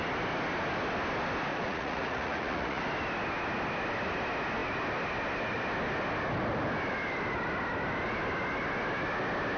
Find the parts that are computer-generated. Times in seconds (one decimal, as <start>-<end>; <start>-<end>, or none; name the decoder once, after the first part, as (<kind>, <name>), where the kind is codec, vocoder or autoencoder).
1.5-2.8 (vocoder, Vocos)